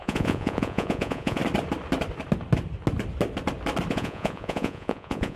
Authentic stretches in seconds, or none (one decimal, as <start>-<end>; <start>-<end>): 1.4-3.9